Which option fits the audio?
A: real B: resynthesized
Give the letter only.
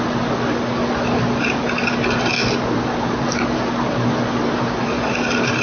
A